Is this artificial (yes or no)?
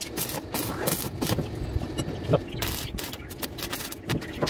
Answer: no